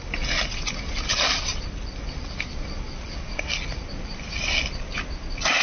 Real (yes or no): yes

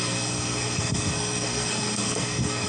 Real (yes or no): no